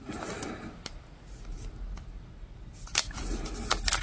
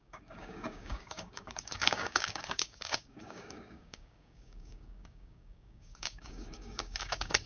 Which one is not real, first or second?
second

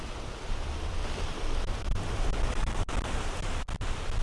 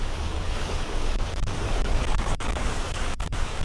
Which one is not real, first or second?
second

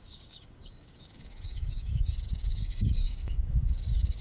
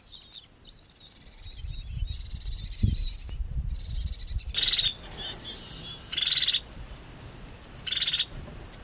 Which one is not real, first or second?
first